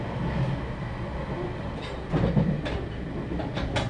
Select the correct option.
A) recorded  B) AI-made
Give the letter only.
A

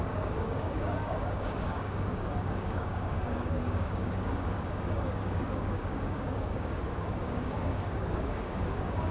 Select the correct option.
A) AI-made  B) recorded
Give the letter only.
A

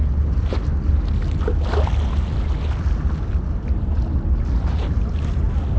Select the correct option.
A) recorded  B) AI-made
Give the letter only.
A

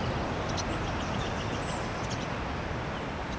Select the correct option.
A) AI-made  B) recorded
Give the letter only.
B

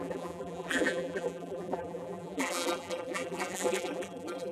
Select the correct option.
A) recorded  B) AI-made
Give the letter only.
B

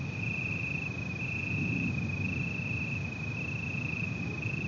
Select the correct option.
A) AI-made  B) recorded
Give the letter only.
B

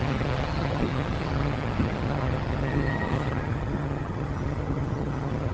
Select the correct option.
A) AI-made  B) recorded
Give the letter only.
A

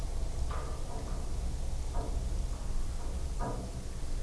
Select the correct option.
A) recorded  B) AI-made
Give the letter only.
A